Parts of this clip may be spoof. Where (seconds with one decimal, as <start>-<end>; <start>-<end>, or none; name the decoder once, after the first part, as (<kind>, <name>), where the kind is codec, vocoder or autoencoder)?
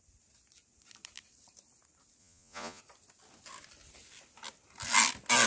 2.2-2.8 (vocoder, Vocos)